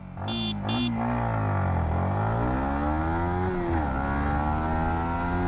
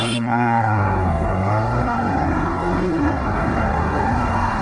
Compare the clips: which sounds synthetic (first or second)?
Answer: second